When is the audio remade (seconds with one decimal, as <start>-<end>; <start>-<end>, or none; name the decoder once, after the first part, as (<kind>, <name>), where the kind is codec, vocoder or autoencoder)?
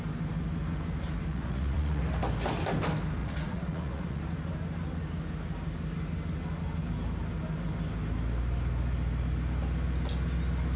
1.3-2.0 (vocoder, Vocos); 3.2-4.2